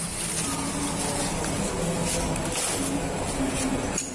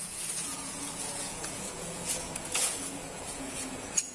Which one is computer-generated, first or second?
second